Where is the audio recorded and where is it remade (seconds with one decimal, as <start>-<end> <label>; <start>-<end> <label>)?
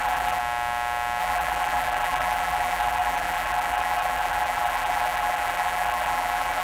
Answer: 0.0-0.4 remade; 0.4-1.2 recorded; 1.2-6.6 remade